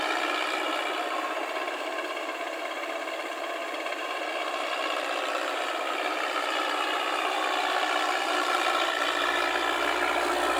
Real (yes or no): yes